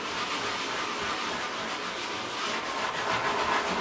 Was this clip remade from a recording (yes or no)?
no